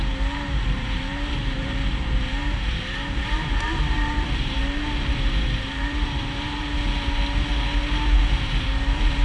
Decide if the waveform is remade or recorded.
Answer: remade